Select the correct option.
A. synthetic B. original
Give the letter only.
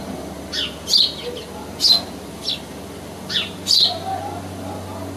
B